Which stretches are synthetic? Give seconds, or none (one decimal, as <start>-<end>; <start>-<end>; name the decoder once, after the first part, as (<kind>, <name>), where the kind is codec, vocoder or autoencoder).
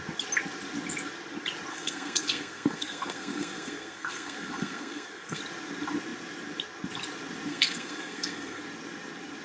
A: 1.7-5.4 (codec, SNAC); 7.5-8.6